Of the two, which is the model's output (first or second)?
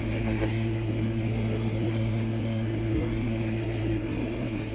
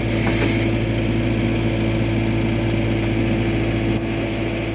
first